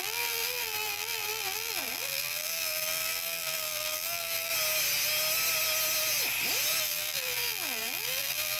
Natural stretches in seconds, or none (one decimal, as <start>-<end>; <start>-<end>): 4.5-6.8